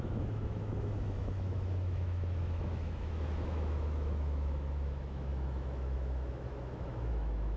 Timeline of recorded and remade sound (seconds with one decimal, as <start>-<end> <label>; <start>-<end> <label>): 0.0-7.6 remade